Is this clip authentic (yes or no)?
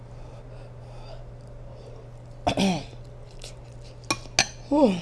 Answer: yes